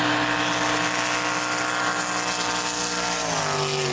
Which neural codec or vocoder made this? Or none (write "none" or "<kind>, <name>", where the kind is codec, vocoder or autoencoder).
none